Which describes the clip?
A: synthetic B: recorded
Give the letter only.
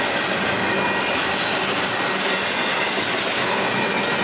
B